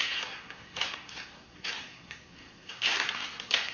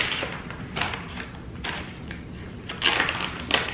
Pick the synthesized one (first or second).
first